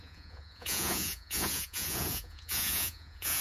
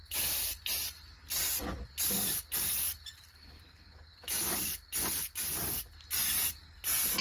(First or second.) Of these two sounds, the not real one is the first